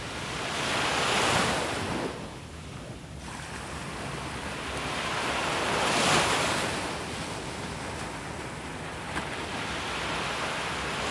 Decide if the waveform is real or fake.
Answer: real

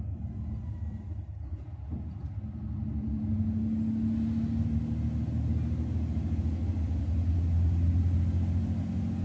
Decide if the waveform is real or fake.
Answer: real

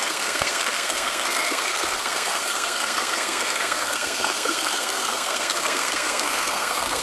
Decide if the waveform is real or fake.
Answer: fake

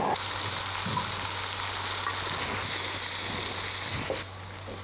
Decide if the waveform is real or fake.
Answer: real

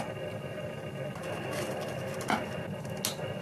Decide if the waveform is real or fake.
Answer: real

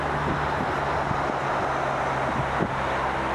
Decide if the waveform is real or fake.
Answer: real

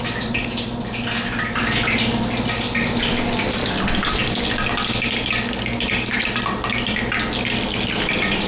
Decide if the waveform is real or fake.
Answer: real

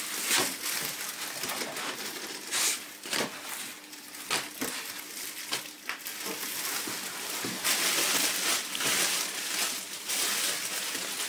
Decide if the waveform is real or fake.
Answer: real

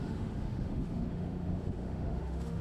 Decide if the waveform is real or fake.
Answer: fake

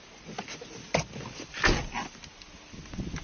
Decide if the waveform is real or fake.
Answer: real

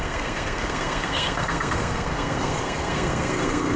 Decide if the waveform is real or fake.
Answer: fake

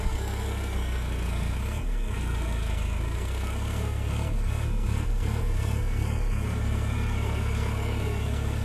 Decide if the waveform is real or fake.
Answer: fake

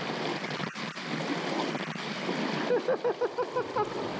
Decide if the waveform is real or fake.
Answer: real